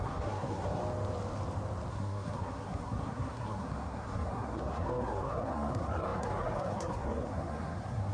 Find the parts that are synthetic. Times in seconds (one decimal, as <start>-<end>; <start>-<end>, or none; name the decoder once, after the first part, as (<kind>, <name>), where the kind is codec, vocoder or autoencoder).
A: 0.0-0.8 (codec, SNAC); 1.9-8.1